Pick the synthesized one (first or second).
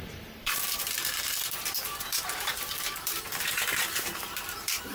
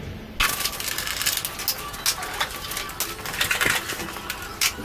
first